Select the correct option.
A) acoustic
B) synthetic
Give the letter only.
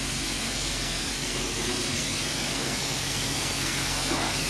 B